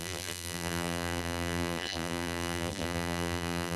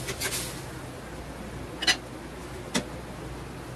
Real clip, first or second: second